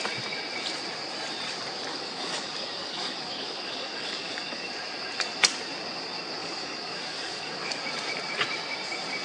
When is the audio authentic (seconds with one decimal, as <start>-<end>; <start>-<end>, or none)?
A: 0.0-1.9; 4.7-6.4; 7.8-9.2